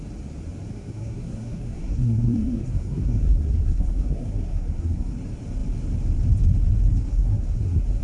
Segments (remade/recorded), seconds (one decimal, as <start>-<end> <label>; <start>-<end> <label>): 0.0-0.7 recorded; 0.7-5.1 remade; 5.1-7.1 recorded; 7.1-8.0 remade